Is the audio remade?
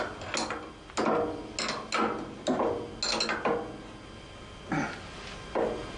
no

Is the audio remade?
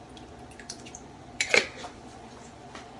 yes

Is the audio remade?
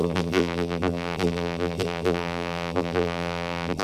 yes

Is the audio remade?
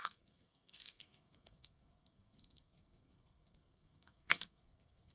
yes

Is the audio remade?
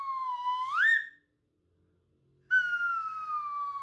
no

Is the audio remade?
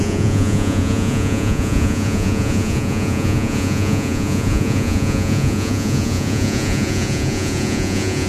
yes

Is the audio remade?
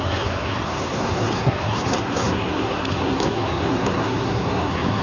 yes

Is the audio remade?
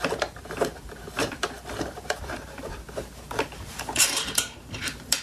yes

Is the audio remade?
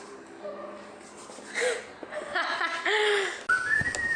no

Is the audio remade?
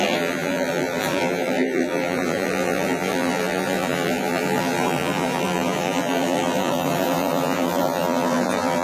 yes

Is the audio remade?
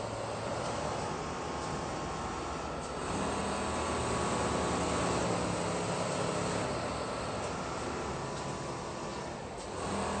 no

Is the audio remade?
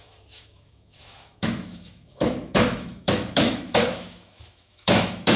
yes